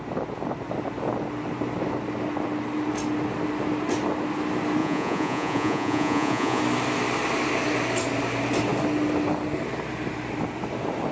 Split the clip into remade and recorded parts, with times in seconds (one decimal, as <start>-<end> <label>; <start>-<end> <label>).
0.0-4.8 recorded; 4.8-6.6 remade; 6.6-11.1 recorded